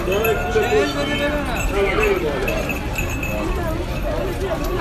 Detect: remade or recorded recorded